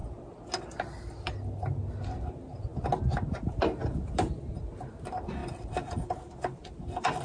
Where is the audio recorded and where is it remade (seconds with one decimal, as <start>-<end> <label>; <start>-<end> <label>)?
0.0-7.2 recorded